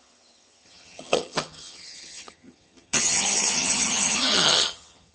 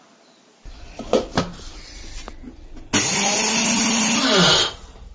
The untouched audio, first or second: second